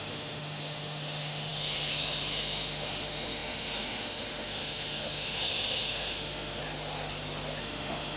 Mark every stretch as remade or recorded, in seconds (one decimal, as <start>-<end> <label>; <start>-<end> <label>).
0.0-6.6 remade; 6.6-7.6 recorded; 7.6-8.2 remade